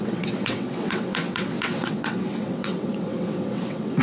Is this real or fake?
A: fake